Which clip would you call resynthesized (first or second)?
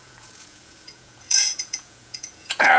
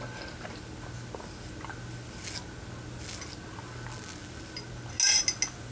first